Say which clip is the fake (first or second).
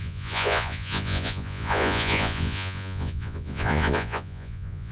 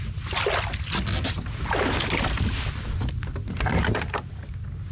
first